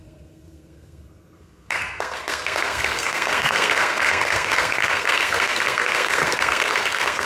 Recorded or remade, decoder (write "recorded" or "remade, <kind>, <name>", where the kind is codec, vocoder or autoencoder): remade, codec, SNAC